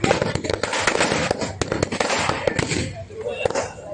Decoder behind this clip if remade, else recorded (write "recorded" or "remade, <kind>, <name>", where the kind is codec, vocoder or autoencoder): recorded